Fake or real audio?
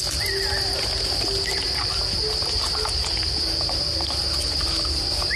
real